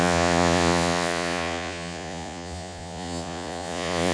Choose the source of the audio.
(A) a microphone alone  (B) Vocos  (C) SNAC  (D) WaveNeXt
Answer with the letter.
B